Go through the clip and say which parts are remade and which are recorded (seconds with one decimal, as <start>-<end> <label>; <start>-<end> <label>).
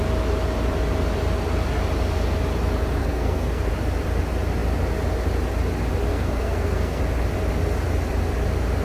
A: 0.0-3.0 recorded; 3.0-3.7 remade; 3.7-6.1 recorded; 6.1-7.0 remade; 7.0-8.8 recorded